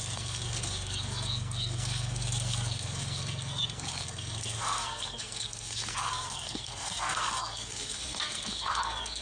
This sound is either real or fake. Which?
fake